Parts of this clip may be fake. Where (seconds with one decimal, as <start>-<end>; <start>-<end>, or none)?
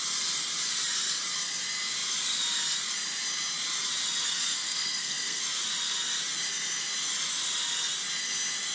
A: 4.3-5.4